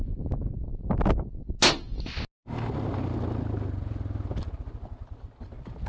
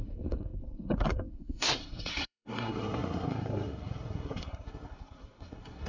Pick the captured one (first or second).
first